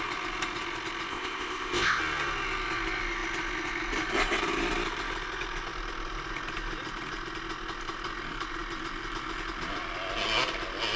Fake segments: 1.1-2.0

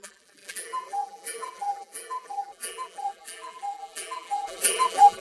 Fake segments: 0.0-5.2

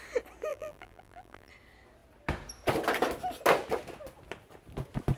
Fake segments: 0.5-1.5

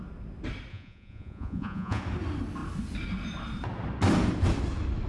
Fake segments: 0.7-2.0

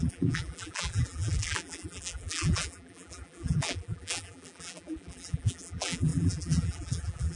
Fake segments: 0.0-7.4

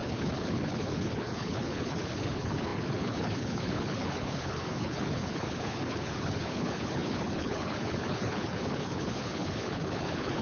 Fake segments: 0.0-10.4

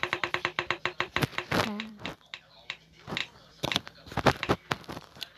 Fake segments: 0.0-5.4

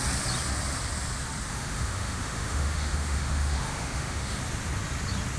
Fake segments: 1.5-4.4